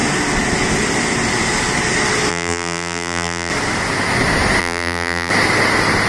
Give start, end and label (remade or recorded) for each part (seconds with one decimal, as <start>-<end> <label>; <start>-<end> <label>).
0.0-2.3 recorded; 2.3-3.5 remade; 3.5-4.6 recorded; 4.6-5.3 remade; 5.3-6.1 recorded